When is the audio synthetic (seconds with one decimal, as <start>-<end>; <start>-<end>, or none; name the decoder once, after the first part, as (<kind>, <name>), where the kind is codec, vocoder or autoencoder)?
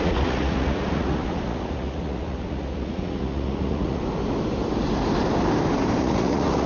0.0-4.0 (vocoder, Vocos); 6.0-6.7